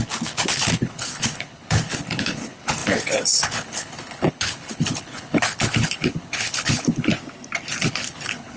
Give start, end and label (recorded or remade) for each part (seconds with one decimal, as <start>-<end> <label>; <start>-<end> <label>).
0.0-7.1 remade; 7.1-7.9 recorded; 7.9-8.6 remade